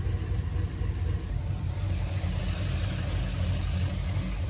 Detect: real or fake real